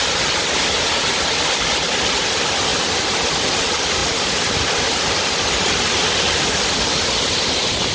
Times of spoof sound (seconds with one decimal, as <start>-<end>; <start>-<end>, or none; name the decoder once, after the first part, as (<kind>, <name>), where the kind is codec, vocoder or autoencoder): none